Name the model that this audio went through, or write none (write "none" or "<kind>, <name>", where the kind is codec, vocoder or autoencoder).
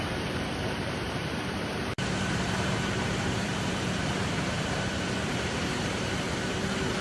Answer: vocoder, BigVGAN v2